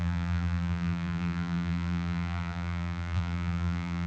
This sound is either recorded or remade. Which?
remade